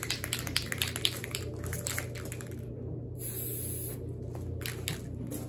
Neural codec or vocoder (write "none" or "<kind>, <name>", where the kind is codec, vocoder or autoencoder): none